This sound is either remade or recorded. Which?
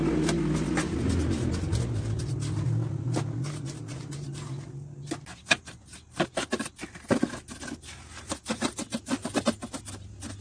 recorded